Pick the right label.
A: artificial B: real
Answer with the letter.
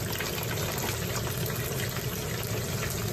B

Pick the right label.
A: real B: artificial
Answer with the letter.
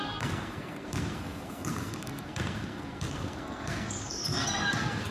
B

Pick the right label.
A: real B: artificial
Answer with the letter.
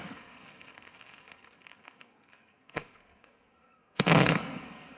B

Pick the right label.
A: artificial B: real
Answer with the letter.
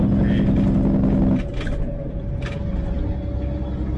B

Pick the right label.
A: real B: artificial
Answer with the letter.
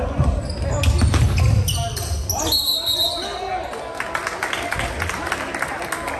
A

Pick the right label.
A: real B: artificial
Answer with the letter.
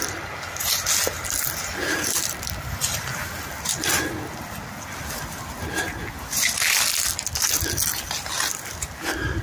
A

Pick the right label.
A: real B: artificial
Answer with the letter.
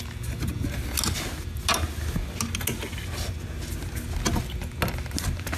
A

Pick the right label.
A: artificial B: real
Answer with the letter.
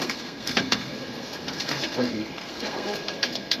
A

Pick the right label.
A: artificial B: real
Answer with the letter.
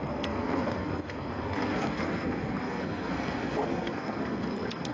A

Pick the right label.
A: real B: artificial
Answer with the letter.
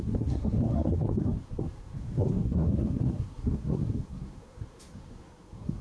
B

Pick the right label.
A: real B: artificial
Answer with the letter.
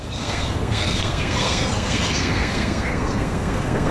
B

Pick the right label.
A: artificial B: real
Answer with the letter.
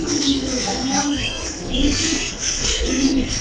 A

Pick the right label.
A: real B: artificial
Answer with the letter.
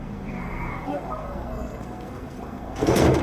B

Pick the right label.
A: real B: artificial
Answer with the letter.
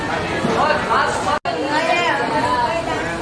A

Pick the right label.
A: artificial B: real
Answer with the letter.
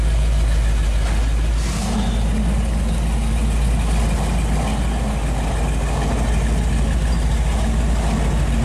B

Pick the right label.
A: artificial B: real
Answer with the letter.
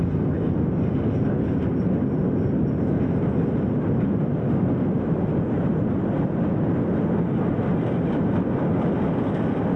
B